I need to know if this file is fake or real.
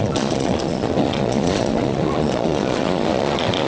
fake